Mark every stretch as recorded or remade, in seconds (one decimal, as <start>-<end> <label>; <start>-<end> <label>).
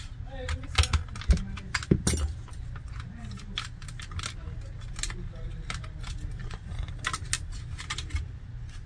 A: 0.0-6.4 recorded; 6.4-6.9 remade; 6.9-8.9 recorded